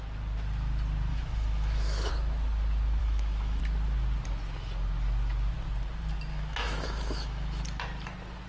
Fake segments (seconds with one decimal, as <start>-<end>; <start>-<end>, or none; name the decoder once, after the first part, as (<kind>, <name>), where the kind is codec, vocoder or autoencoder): 1.1-2.1 (autoencoder, DAC-VAE); 3.0-3.6; 6.3-7.6